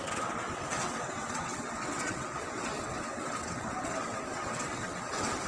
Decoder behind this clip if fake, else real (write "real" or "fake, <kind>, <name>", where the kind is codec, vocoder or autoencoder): fake, vocoder, WaveNeXt